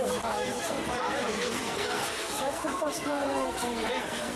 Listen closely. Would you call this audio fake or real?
fake